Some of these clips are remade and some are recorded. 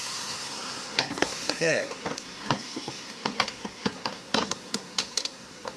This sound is remade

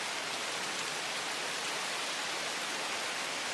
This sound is recorded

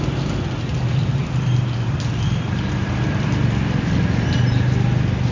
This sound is recorded